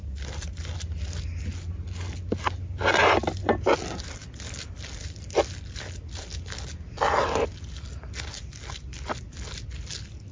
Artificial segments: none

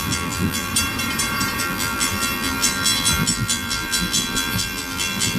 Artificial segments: 0.0-0.7 (vocoder, BigVGAN v2); 1.6-5.4

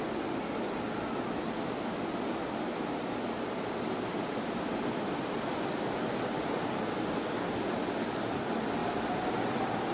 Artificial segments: 8.8-9.3 (vocoder, BigVGAN v2)